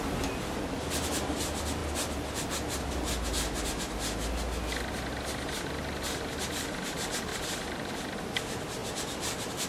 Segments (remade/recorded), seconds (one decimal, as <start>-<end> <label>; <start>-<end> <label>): 0.0-7.3 recorded; 7.3-7.9 remade; 7.9-8.8 recorded; 8.8-9.7 remade